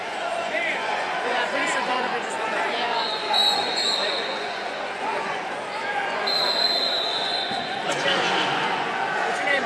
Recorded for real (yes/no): no